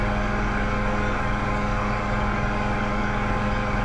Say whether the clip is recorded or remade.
remade